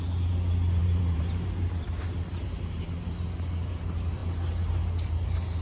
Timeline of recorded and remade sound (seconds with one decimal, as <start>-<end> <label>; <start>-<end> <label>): 0.0-0.8 recorded; 0.8-2.9 remade; 2.9-5.6 recorded